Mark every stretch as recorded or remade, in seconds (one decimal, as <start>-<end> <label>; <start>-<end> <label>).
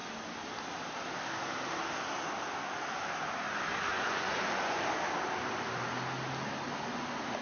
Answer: 0.0-3.9 recorded; 3.9-4.8 remade; 4.8-7.4 recorded